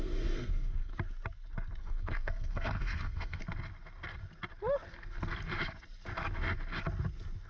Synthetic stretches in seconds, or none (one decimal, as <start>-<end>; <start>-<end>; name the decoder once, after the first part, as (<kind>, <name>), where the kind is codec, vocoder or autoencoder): 0.0-0.9 (codec, SNAC); 1.8-3.4